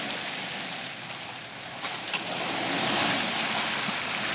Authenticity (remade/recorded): recorded